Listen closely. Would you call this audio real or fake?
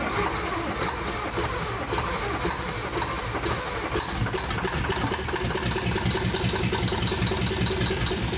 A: real